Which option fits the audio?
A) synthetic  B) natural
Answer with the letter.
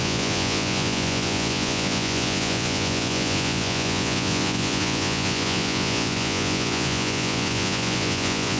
A